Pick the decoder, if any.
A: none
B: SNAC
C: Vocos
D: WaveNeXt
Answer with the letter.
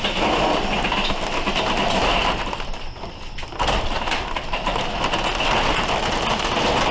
A